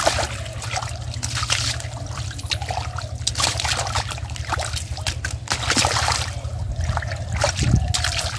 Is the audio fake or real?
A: real